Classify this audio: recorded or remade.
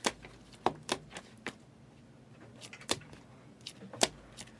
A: recorded